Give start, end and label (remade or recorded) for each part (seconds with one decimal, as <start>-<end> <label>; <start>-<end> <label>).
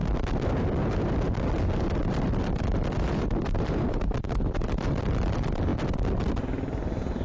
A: 0.0-7.2 recorded